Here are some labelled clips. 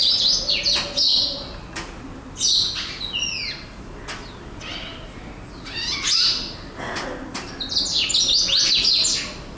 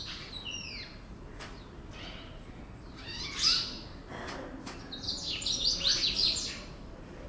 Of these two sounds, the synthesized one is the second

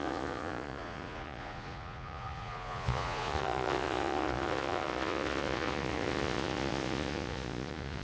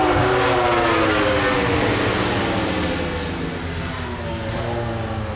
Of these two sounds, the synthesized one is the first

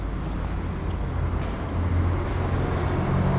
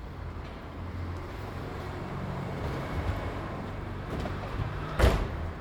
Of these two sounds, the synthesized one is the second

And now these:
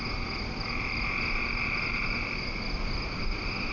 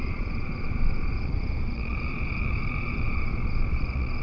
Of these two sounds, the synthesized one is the second